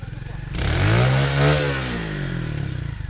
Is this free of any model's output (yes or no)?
yes